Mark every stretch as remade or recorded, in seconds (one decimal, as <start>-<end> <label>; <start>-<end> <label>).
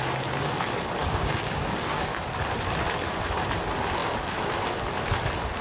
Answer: 0.0-1.0 recorded; 1.0-2.2 remade; 2.2-5.6 recorded